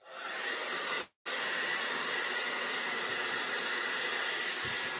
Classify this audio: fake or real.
real